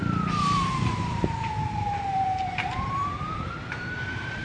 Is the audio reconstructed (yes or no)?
yes